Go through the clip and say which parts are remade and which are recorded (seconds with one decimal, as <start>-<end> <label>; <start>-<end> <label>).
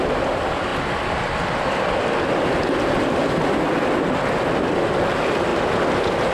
0.0-6.3 recorded